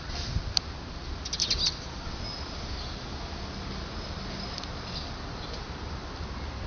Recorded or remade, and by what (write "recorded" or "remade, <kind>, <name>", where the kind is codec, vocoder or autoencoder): recorded